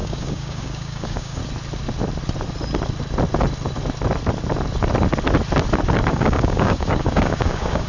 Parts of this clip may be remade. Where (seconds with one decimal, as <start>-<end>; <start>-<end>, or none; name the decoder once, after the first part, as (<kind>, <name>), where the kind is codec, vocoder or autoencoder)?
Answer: 0.0-1.4 (codec, DAC); 6.1-7.9